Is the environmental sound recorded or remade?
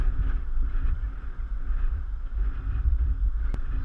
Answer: recorded